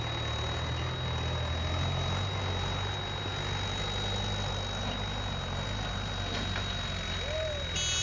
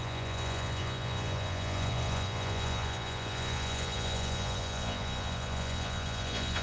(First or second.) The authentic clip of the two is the first